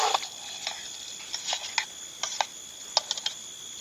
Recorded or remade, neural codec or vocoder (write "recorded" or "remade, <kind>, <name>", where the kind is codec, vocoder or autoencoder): recorded